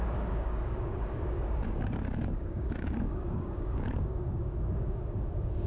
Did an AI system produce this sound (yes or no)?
yes